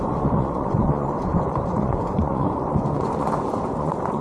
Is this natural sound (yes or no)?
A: no